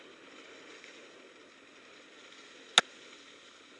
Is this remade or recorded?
recorded